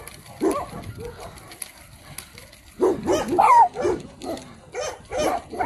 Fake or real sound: real